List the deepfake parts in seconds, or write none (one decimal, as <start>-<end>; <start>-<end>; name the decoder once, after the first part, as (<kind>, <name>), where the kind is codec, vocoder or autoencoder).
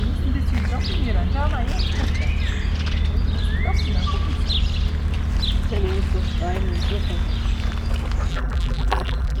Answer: 8.3-9.4 (vocoder, BigVGAN v2)